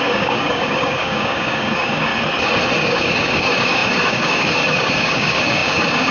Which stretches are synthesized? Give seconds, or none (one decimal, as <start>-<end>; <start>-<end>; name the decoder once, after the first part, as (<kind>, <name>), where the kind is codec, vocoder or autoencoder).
0.0-2.1 (codec, DAC); 2.8-6.1